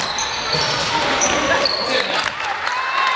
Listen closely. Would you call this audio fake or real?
real